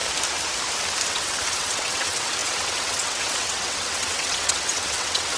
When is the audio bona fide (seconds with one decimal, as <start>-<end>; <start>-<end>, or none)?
0.0-1.1